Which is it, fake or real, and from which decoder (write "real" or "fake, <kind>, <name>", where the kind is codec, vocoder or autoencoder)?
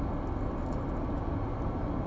real